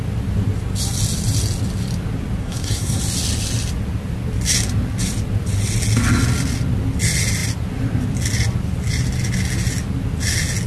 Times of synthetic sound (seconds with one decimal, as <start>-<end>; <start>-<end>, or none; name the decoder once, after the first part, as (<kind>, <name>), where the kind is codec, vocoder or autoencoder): 2.4-3.0 (codec, SNAC)